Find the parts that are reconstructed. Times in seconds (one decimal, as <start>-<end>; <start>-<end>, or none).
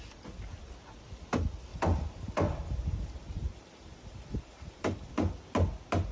1.7-5.1